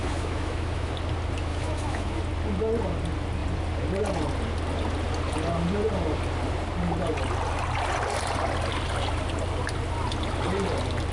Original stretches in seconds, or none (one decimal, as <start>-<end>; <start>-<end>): 0.9-1.5; 2.2-11.1